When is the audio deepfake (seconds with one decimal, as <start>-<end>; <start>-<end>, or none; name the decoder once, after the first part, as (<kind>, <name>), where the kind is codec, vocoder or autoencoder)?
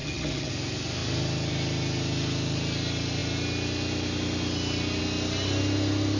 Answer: 0.0-0.5 (vocoder, HiFi-GAN)